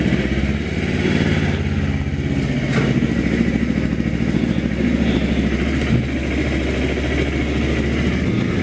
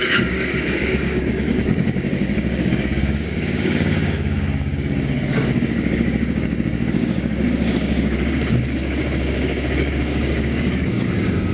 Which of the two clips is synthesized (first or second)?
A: second